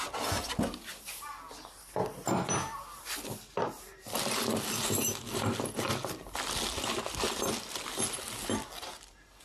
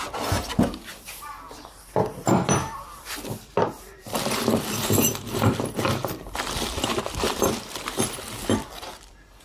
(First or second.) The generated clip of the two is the second